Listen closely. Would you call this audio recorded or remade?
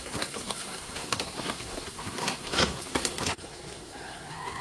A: remade